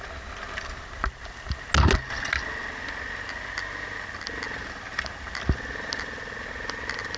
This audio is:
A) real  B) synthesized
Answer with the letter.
A